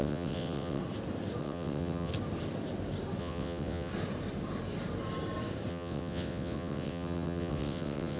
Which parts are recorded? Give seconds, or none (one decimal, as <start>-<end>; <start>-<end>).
0.8-1.4; 2.1-3.2; 3.9-5.7